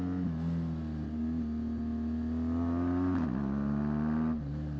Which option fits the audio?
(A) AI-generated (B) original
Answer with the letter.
B